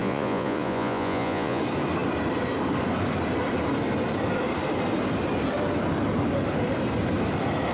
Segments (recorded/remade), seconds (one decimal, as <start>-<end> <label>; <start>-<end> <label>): 0.0-1.6 remade; 1.6-7.7 recorded